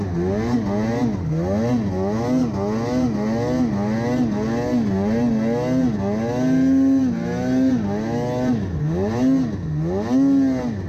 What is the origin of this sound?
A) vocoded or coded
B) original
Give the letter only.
B